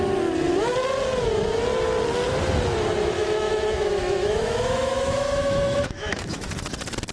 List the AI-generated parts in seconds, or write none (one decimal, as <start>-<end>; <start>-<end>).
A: 3.2-6.5